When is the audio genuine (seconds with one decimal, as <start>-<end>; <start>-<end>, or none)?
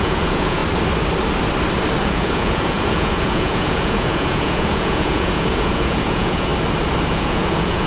0.6-2.0; 6.5-7.1